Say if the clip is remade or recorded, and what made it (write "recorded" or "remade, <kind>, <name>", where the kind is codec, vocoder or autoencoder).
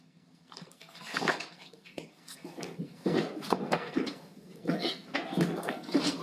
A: remade, codec, SNAC